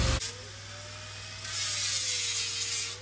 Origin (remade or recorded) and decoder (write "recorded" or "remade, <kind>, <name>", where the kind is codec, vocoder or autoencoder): recorded